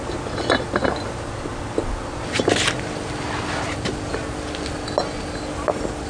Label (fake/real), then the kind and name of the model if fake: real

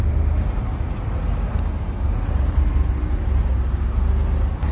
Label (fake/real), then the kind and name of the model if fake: real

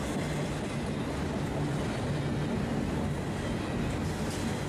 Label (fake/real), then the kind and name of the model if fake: real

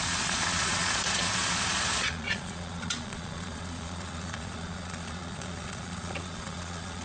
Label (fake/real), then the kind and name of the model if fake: fake, vocoder, Vocos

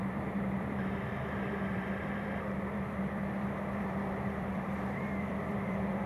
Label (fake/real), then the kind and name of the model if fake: fake, vocoder, BigVGAN v2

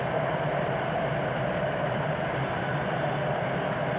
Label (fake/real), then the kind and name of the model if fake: fake, vocoder, BigVGAN v2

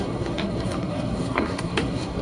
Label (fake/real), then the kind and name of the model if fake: fake, codec, SNAC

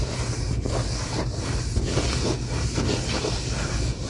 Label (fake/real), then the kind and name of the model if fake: real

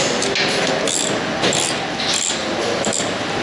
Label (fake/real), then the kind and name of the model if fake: real